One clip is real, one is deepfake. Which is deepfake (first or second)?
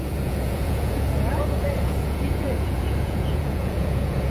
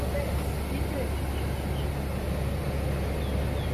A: first